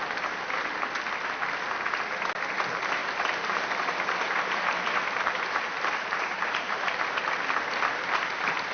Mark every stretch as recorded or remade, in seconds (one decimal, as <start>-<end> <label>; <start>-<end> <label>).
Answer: 0.0-3.0 recorded; 3.0-7.1 remade; 7.1-8.7 recorded